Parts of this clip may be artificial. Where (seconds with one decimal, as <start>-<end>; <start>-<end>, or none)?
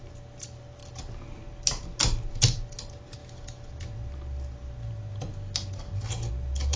none